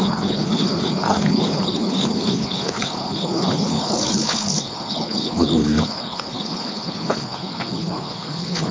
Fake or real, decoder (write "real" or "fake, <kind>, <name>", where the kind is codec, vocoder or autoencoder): fake, codec, HILCodec